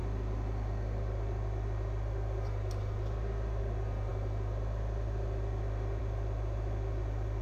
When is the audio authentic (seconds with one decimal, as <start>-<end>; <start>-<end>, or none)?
0.0-7.4